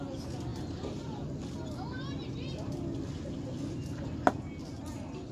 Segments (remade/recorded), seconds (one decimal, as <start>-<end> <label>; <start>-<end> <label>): 0.0-5.3 recorded